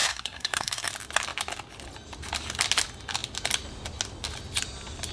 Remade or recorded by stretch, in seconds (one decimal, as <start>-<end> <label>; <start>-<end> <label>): 0.0-0.9 remade; 0.9-5.1 recorded